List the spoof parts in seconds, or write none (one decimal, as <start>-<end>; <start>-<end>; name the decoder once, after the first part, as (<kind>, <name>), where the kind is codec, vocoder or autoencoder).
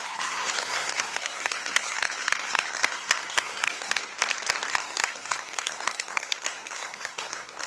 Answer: 0.0-4.1 (codec, SNAC); 4.7-7.7